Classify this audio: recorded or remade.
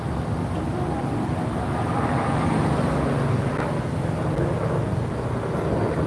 recorded